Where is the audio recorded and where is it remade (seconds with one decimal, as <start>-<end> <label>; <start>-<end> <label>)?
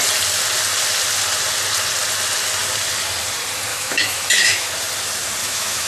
0.0-3.7 recorded; 3.7-4.7 remade; 4.7-5.4 recorded; 5.4-5.9 remade